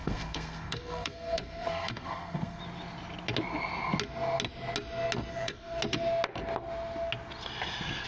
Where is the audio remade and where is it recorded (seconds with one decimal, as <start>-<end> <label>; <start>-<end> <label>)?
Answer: 0.0-2.6 remade; 2.6-5.3 recorded; 5.3-5.8 remade; 5.8-8.1 recorded